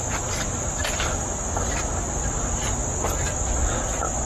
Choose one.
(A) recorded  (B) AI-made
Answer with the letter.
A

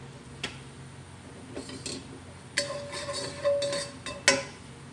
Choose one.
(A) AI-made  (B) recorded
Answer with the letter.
B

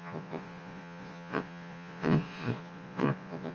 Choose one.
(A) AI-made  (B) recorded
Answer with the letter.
A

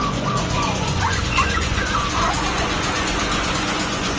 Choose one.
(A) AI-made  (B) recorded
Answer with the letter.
A